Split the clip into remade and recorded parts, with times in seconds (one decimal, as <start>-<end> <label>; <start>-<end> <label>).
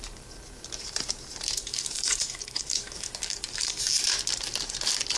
0.0-1.6 recorded; 1.6-3.8 remade; 3.8-5.2 recorded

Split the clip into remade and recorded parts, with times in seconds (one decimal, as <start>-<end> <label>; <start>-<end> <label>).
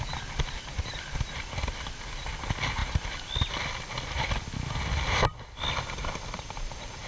0.0-7.1 recorded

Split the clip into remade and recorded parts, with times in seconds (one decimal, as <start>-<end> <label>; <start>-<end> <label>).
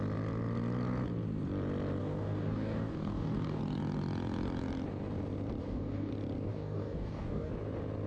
0.0-2.0 recorded; 2.0-3.6 remade; 3.6-5.6 recorded; 5.6-6.1 remade; 6.1-6.5 recorded; 6.5-7.5 remade; 7.5-8.1 recorded